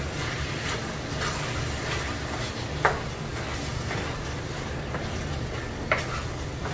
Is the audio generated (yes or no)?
no